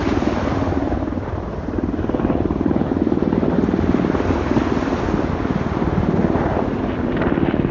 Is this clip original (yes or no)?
yes